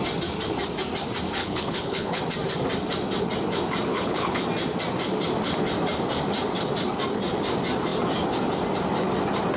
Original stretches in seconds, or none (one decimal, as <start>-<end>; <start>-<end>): 0.0-1.4; 2.2-3.9; 4.4-9.6